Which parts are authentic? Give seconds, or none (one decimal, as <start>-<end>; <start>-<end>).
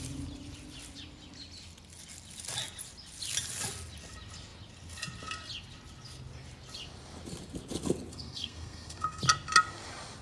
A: 0.0-8.1; 9.2-10.2